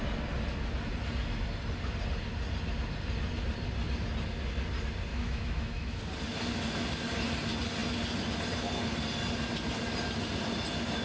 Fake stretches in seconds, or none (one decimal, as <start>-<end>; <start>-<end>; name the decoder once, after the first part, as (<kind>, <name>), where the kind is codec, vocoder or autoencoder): 5.1-6.0 (autoencoder, DAC-VAE)